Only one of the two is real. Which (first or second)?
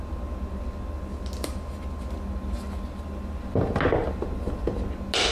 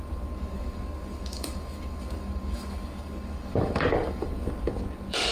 first